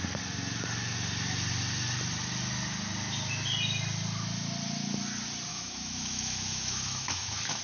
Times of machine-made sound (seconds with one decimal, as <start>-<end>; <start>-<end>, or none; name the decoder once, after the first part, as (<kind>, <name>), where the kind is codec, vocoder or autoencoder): 5.5-7.6 (autoencoder, DAC-VAE)